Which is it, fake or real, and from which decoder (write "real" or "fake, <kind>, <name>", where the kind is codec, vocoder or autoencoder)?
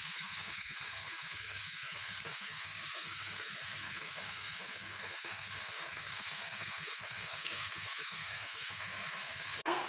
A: fake, codec, SNAC